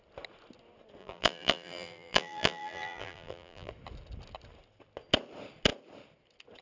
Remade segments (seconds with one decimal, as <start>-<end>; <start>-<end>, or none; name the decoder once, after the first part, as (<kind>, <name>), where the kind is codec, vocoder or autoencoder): 1.0-3.7 (vocoder, BigVGAN v2)